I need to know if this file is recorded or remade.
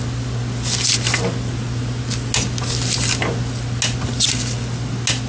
recorded